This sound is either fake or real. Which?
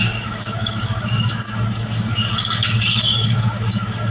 fake